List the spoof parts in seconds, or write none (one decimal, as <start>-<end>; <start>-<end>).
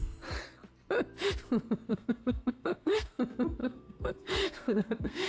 1.9-3.2; 3.6-5.3